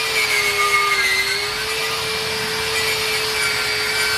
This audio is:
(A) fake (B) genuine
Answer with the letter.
B